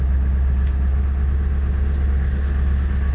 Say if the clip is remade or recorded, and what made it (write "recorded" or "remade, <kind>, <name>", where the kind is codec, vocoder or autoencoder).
recorded